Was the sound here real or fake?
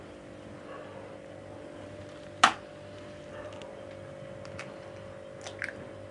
real